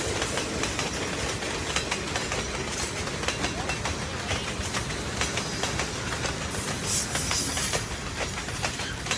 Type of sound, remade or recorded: recorded